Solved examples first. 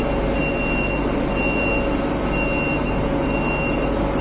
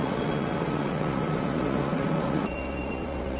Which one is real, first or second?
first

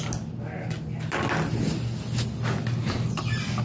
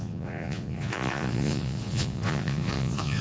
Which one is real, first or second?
first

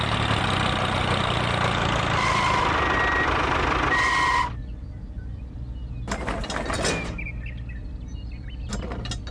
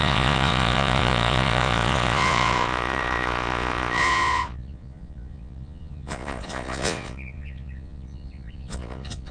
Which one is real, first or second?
first